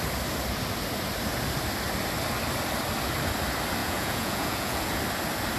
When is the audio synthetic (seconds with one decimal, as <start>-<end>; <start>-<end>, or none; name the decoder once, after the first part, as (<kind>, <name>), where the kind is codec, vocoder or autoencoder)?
3.8-5.0 (vocoder, Vocos)